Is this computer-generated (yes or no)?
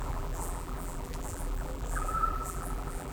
yes